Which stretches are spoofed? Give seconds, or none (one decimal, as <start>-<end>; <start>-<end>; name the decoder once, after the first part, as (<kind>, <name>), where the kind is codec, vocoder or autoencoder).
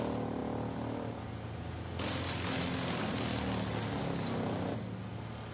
none